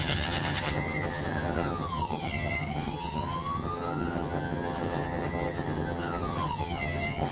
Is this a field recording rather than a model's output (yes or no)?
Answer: no